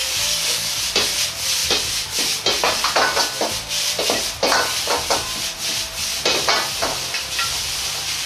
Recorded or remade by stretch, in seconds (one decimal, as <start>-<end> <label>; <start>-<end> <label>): 0.0-0.7 remade; 0.7-8.3 recorded